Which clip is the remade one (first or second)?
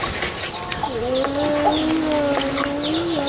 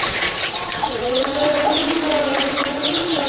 second